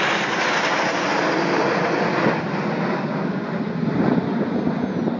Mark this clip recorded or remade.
recorded